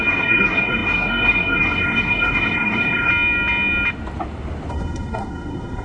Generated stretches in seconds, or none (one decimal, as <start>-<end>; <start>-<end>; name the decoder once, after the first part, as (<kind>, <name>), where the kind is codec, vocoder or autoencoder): 0.0-3.1 (codec, SNAC); 4.7-5.8